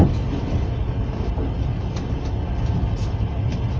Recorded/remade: recorded